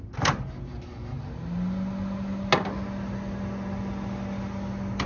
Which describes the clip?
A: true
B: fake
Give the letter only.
A